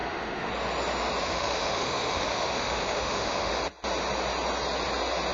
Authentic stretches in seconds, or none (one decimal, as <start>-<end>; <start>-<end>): 0.5-1.2; 3.5-5.3